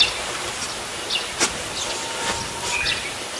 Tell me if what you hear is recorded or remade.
recorded